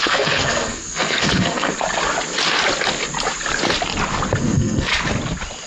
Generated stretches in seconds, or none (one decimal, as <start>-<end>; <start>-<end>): 0.0-1.7; 4.4-4.9